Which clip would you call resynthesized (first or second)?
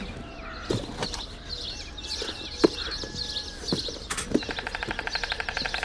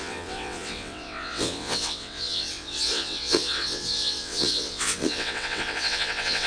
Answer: second